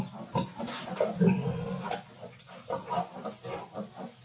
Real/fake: real